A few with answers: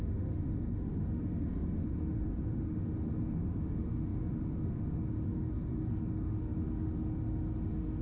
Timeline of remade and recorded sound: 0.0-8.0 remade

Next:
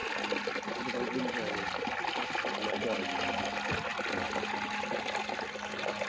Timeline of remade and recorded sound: 0.0-6.1 recorded

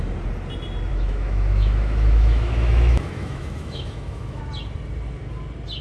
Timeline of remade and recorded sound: 0.0-0.9 recorded; 0.9-4.4 remade; 4.4-5.8 recorded